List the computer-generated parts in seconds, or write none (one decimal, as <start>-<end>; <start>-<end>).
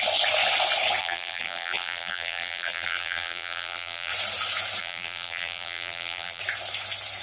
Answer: 1.0-4.1; 4.8-6.4